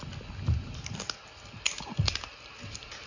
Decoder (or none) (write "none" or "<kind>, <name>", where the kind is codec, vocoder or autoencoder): none